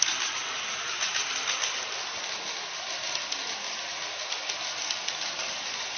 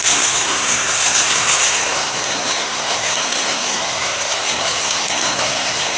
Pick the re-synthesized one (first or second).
second